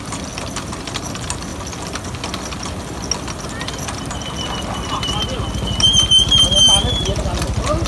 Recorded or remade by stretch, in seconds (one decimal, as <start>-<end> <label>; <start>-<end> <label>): 0.0-7.9 recorded